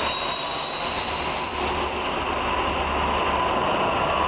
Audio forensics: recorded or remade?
recorded